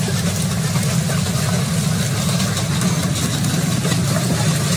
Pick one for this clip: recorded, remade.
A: recorded